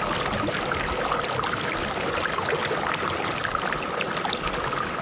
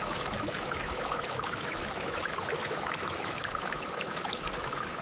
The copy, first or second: second